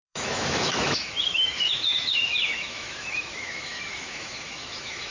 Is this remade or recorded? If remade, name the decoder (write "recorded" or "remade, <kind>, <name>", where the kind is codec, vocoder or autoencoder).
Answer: remade, autoencoder, DAC-VAE